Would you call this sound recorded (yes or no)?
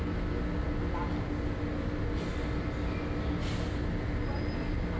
yes